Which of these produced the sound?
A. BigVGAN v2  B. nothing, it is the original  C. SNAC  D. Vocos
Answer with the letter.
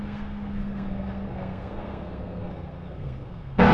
C